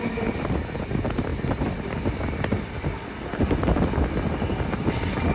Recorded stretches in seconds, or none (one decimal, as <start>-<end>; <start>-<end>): 0.0-5.3